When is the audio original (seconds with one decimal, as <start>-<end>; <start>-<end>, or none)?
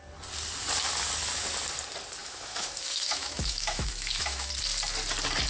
0.0-2.2; 4.5-5.5